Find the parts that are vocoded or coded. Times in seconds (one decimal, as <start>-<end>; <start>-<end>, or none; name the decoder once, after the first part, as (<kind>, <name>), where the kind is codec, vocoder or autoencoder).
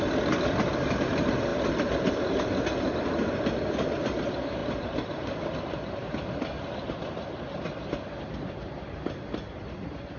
none